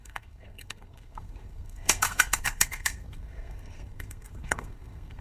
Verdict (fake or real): fake